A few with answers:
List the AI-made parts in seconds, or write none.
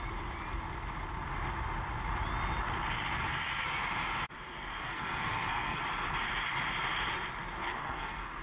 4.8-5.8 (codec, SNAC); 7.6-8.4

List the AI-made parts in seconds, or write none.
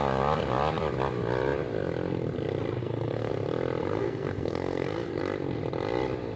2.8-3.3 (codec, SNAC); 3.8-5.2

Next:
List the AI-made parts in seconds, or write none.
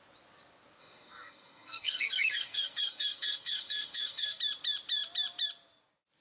0.8-4.4 (codec, SNAC)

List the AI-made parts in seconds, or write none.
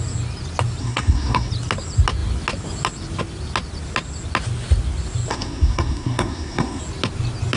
0.8-1.5 (codec, SNAC); 5.3-6.8